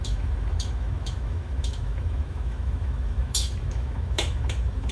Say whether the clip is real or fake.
fake